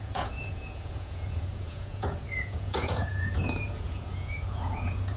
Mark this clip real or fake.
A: fake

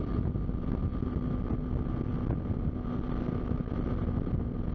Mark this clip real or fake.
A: real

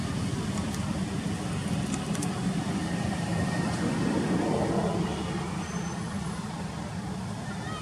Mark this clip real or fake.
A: real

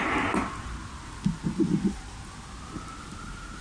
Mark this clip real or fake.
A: real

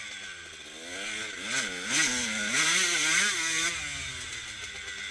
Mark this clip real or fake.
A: real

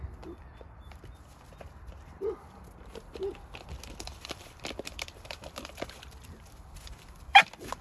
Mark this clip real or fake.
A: fake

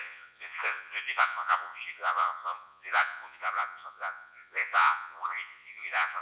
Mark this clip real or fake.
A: fake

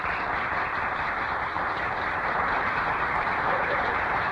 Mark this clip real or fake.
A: fake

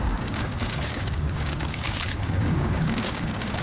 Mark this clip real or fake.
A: fake